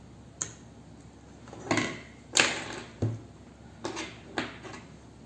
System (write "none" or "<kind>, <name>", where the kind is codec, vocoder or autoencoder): none